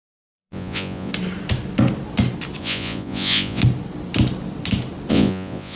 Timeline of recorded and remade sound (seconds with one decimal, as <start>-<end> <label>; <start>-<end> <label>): 0.0-1.1 remade; 1.1-2.6 recorded; 2.6-3.6 remade; 3.6-5.1 recorded; 5.1-5.8 remade